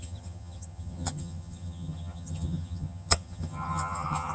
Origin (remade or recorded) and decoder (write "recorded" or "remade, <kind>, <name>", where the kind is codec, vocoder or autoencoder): remade, vocoder, HiFi-GAN